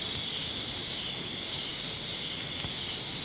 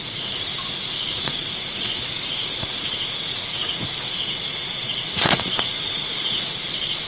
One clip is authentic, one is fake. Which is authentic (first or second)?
first